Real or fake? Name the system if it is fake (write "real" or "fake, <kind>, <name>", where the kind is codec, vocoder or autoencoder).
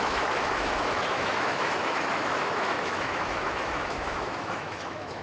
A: fake, autoencoder, DAC-VAE